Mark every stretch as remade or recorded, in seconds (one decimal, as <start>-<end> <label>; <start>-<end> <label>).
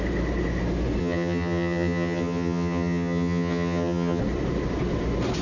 0.0-1.0 recorded; 1.0-4.2 remade; 4.2-5.4 recorded